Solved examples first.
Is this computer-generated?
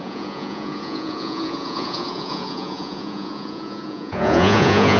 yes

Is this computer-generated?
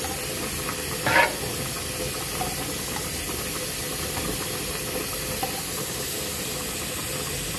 no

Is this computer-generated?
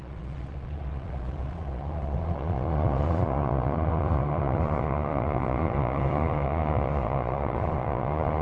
yes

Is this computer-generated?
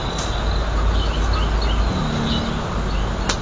no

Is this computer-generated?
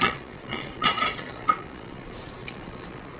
yes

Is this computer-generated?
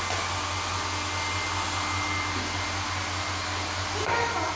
no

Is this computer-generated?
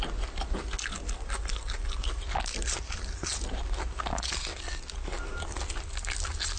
no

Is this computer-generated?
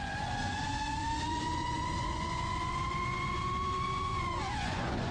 yes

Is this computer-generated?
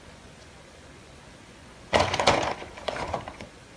yes